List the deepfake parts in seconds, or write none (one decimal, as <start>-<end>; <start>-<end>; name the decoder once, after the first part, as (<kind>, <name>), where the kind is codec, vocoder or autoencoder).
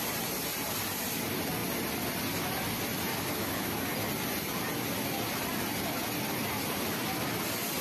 3.1-3.7 (autoencoder, DAC-VAE)